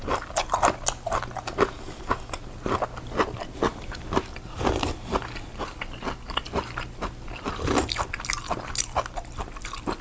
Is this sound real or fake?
real